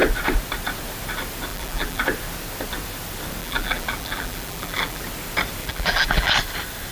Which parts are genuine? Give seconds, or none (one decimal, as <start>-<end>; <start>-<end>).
0.0-1.5; 2.0-3.4; 5.0-5.6; 6.3-6.9